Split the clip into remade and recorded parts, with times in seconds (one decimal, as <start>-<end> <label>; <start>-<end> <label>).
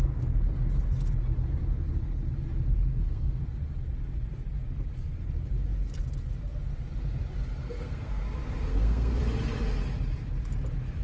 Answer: 0.0-2.9 recorded; 2.9-3.4 remade; 3.4-7.6 recorded; 7.6-8.2 remade; 8.2-8.7 recorded; 8.7-9.2 remade; 9.2-11.0 recorded